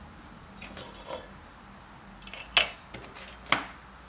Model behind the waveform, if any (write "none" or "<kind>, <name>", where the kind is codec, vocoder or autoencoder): none